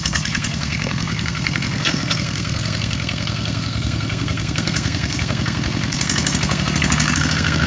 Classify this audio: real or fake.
fake